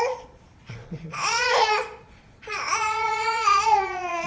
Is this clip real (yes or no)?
no